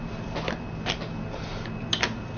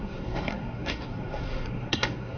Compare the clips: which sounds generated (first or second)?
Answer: second